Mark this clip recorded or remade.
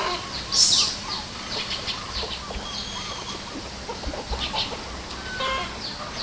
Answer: recorded